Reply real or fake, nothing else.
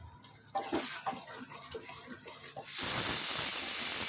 real